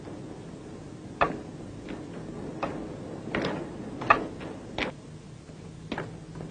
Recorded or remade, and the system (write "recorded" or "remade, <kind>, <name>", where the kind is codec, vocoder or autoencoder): recorded